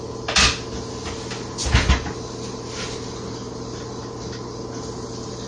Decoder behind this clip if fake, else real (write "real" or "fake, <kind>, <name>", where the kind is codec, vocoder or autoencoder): real